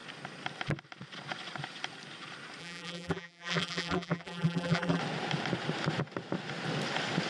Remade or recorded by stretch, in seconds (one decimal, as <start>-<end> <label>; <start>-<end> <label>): 0.0-2.6 recorded; 2.6-5.0 remade; 5.0-7.3 recorded